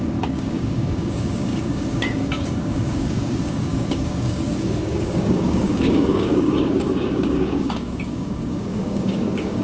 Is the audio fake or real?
fake